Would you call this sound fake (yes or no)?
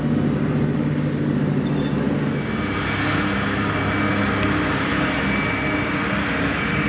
no